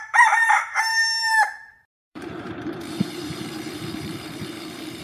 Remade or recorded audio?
remade